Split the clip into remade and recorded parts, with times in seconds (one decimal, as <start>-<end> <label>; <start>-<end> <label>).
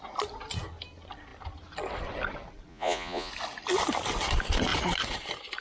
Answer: 0.0-2.7 recorded; 2.7-3.3 remade; 3.3-5.6 recorded